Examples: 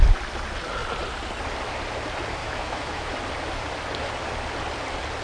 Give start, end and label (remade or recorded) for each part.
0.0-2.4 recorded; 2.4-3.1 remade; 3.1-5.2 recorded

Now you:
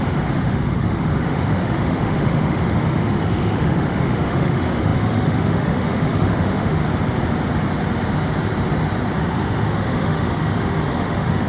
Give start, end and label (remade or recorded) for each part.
0.0-6.8 remade; 6.8-9.2 recorded; 9.2-11.5 remade

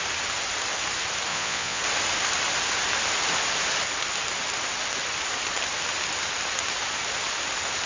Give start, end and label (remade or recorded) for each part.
0.0-1.3 recorded; 1.3-1.8 remade; 1.8-7.9 recorded